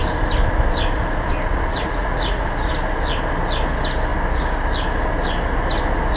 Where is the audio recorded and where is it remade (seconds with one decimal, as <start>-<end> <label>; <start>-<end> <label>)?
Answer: 0.0-1.7 recorded; 1.7-2.7 remade; 2.7-6.2 recorded

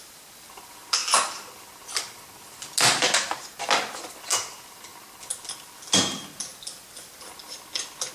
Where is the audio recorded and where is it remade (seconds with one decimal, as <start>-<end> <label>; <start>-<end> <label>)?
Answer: 0.0-8.1 recorded